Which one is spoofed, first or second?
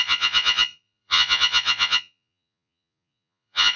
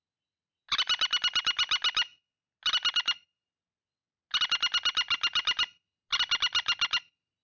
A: first